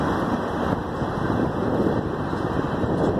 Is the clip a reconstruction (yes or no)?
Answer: no